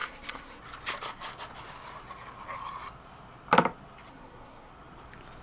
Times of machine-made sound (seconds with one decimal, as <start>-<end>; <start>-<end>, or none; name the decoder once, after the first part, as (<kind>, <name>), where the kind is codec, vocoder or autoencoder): 0.0-0.6 (codec, SNAC); 4.1-4.7